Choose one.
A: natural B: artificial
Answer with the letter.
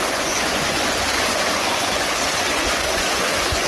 B